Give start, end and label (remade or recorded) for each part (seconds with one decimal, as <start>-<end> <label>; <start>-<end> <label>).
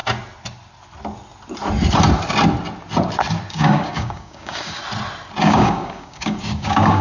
0.0-3.5 recorded; 3.5-4.8 remade; 4.8-5.4 recorded; 5.4-7.0 remade